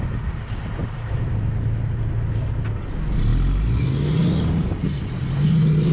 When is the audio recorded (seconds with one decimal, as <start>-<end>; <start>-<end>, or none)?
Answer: 0.0-0.8; 2.5-5.9